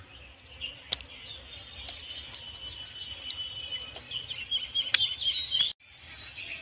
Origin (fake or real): real